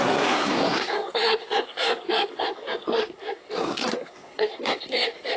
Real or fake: fake